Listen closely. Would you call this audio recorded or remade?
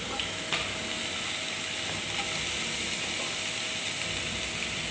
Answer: recorded